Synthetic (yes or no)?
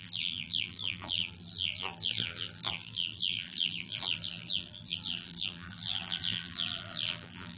yes